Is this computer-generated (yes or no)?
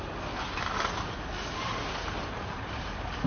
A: no